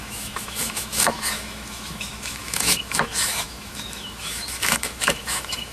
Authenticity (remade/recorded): remade